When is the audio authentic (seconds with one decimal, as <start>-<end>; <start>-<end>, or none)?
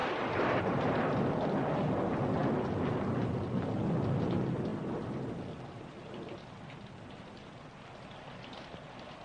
1.3-9.2